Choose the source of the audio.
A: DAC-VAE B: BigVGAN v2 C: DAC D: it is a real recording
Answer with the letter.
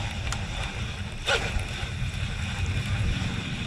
D